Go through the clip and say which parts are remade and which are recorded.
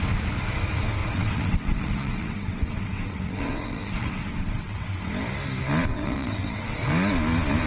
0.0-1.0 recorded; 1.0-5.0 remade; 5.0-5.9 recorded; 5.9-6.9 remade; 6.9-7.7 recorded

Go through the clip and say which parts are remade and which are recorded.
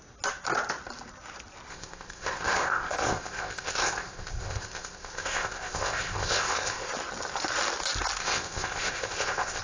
0.0-1.7 recorded; 1.7-6.9 remade; 6.9-8.2 recorded; 8.2-9.6 remade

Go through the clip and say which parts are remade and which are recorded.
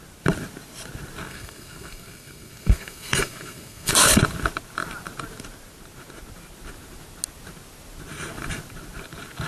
0.0-1.3 recorded; 1.3-3.9 remade; 3.9-9.5 recorded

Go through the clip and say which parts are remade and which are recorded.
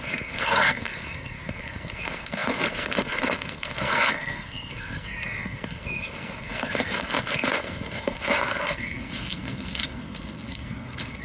0.0-11.2 remade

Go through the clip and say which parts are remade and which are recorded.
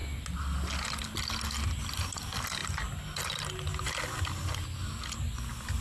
0.0-5.8 recorded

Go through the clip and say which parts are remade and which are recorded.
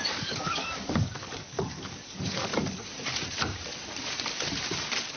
0.0-2.5 remade; 2.5-5.2 recorded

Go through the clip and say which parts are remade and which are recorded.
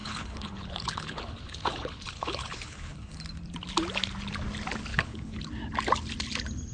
0.0-3.2 remade; 3.2-4.9 recorded; 4.9-5.4 remade; 5.4-6.7 recorded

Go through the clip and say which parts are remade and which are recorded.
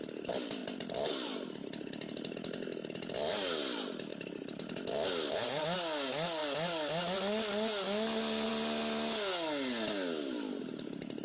0.0-0.6 recorded; 0.6-1.8 remade; 1.8-4.1 recorded; 4.1-4.7 remade; 4.7-11.2 recorded